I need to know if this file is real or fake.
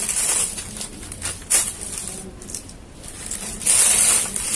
real